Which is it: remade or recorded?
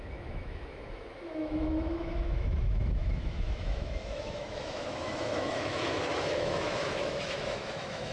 remade